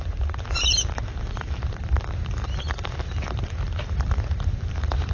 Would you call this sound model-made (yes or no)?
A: yes